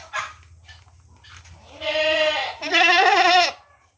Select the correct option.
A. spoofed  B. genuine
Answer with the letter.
B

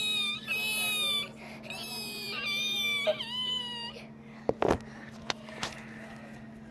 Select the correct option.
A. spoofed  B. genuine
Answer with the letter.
B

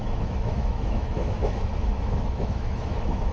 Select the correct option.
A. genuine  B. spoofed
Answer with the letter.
B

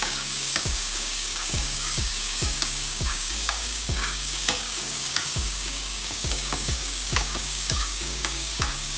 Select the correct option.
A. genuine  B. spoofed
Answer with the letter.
B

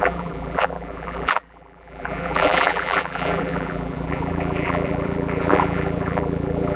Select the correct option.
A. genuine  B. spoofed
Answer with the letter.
B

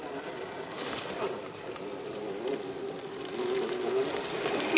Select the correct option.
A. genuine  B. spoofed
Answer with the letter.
A